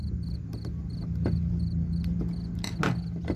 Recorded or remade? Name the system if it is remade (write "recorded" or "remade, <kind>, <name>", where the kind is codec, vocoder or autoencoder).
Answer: recorded